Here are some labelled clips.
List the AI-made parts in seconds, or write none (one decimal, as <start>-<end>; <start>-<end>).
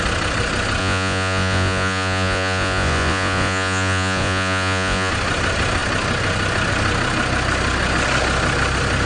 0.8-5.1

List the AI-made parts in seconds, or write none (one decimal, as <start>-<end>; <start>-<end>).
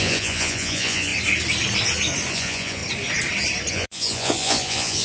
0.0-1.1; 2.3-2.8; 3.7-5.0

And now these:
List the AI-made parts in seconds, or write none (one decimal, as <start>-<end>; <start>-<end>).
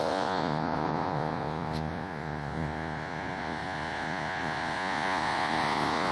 0.0-6.1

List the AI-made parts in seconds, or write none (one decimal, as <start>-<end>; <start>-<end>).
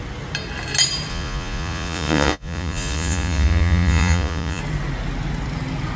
1.1-4.6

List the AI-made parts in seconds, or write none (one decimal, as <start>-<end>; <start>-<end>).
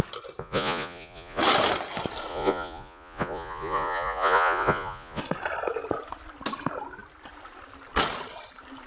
0.4-1.4; 2.3-5.2